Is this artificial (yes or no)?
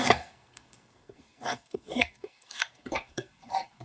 yes